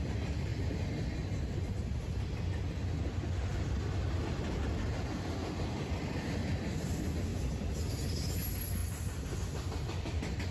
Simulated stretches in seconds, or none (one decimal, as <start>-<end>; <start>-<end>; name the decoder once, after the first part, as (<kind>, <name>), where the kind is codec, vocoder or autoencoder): none